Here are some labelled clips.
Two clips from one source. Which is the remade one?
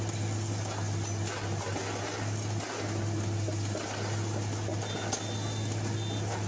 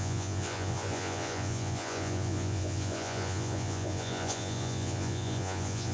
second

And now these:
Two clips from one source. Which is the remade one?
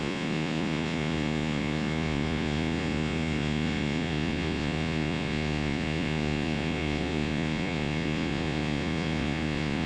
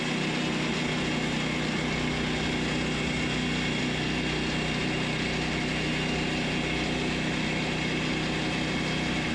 first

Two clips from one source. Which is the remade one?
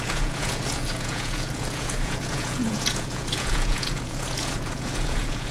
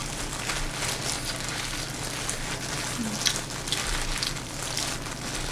first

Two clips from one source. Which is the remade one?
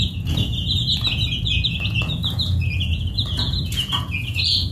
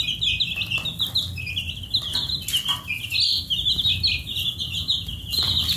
first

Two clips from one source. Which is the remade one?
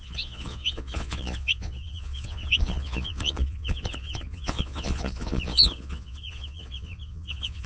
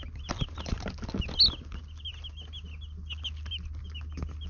first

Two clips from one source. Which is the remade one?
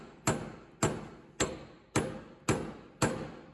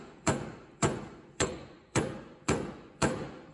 second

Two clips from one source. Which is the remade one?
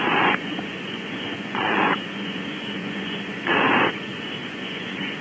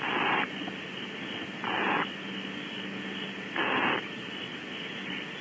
first